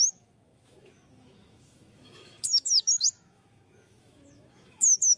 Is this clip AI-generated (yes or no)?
yes